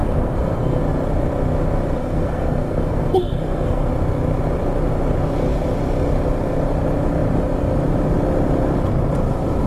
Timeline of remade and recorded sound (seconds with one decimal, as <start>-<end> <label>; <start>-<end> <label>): 0.0-0.8 remade; 0.8-2.0 recorded; 2.0-3.9 remade; 3.9-9.7 recorded